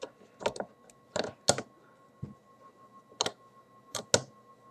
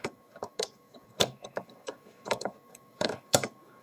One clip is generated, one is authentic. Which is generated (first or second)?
second